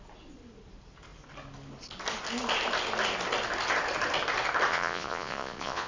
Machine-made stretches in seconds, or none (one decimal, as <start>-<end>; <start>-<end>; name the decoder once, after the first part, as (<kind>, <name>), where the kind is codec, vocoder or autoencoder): 4.7-5.9 (vocoder, Vocos)